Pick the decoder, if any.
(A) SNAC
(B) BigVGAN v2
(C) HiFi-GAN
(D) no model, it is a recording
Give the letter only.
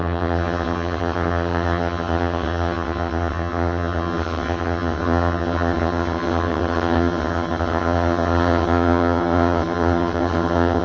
C